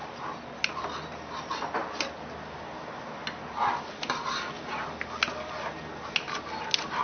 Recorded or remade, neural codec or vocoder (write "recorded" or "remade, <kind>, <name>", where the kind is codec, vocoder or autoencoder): recorded